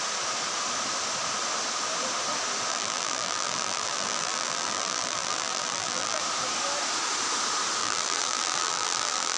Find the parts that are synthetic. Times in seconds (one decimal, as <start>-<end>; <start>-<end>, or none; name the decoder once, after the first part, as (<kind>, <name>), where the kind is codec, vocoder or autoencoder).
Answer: 2.7-6.2 (vocoder, BigVGAN v2); 7.8-9.4